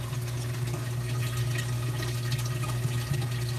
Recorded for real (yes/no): yes